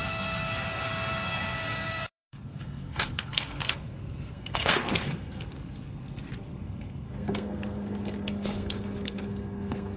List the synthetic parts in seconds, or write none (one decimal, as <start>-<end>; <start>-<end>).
0.0-10.0